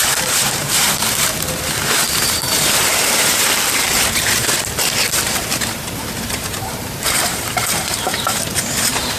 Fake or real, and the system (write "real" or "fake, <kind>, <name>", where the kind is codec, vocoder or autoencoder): fake, vocoder, BigVGAN v2